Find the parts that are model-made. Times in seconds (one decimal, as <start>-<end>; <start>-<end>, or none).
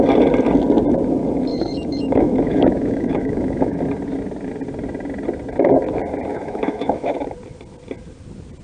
1.5-3.8; 6.3-7.2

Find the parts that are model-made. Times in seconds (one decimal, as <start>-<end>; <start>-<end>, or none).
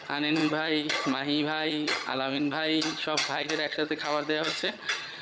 0.0-5.2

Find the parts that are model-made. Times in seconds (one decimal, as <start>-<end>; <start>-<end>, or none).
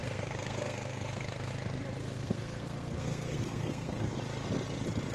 0.0-1.5; 2.0-4.0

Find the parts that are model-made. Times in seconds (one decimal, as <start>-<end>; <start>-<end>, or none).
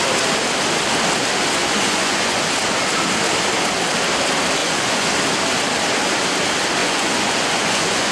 1.6-2.4; 4.6-5.1; 6.8-8.1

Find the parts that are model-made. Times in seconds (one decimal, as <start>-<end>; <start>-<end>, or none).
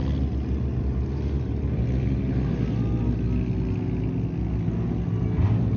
none